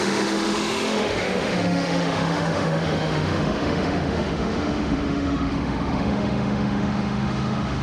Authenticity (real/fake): fake